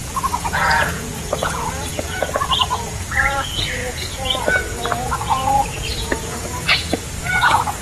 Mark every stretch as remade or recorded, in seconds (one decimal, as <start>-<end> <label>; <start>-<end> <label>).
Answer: 0.0-7.8 remade